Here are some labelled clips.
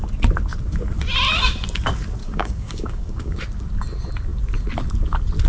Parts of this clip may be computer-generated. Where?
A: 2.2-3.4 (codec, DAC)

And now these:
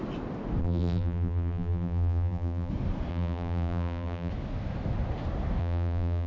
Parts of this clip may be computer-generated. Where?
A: 0.6-2.7 (vocoder, BigVGAN v2); 3.1-4.3; 5.6-6.3